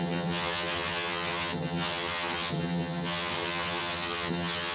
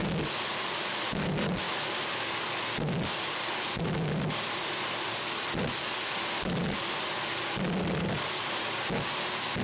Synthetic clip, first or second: first